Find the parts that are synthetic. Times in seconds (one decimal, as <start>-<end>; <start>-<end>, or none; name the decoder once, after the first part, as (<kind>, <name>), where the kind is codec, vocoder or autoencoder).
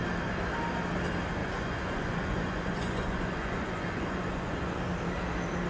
1.4-4.8 (vocoder, Vocos)